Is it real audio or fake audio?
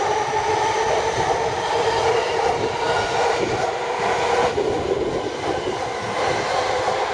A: real